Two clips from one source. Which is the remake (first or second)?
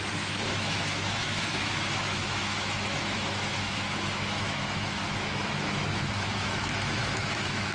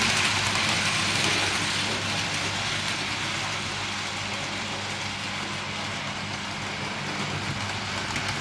first